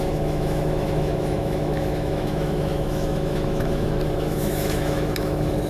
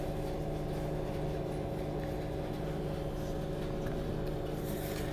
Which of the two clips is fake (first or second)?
first